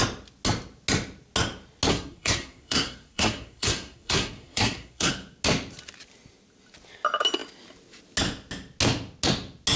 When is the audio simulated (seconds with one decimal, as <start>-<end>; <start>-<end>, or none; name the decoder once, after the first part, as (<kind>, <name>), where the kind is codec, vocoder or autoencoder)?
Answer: 1.9-5.1 (codec, SNAC)